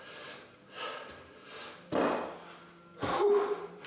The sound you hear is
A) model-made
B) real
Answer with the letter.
B